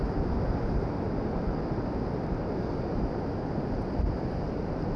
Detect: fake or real real